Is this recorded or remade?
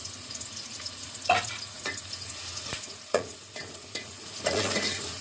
remade